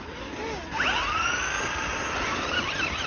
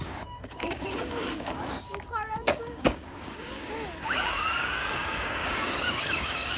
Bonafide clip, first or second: first